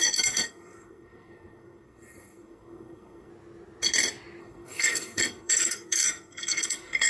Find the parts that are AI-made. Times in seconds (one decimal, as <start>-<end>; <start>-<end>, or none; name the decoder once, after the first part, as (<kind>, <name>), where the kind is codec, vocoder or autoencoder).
0.0-3.3 (codec, SNAC); 4.4-7.1